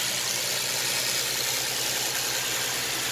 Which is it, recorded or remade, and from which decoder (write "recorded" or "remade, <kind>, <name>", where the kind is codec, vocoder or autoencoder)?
recorded